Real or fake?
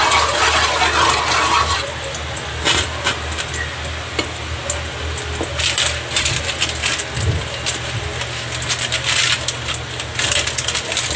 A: real